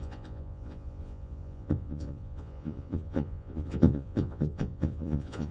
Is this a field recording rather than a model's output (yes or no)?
no